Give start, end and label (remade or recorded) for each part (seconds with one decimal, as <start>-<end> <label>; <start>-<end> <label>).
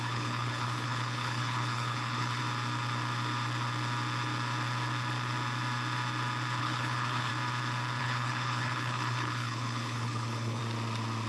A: 0.0-2.4 remade; 2.4-6.6 recorded; 6.6-7.3 remade; 7.3-8.0 recorded; 8.0-10.6 remade; 10.6-11.3 recorded